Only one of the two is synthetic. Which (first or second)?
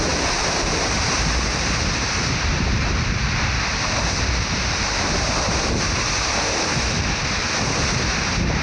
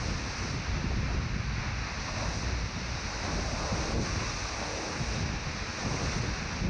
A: first